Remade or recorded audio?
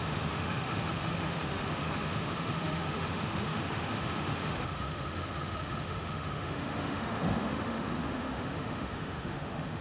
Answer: remade